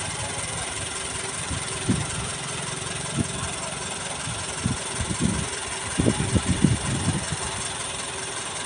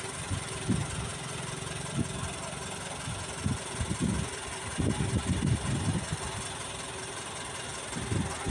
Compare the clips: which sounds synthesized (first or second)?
first